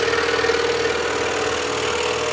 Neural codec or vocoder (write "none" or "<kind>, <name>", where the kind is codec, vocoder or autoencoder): none